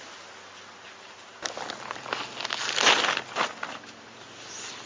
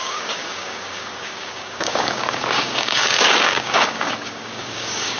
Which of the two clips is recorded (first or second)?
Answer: first